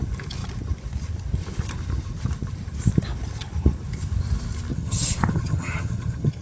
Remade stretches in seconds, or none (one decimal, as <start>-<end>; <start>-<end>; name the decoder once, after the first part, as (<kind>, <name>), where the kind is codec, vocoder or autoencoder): 4.7-6.4 (vocoder, HiFi-GAN)